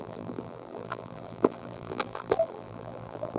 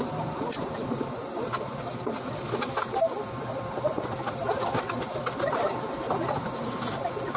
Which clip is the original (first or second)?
second